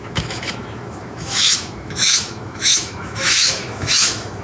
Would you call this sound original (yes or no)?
no